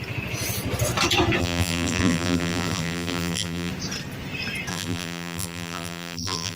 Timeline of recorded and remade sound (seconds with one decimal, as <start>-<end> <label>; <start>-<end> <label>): 0.0-1.4 recorded; 1.4-3.7 remade; 3.7-4.7 recorded; 4.7-6.6 remade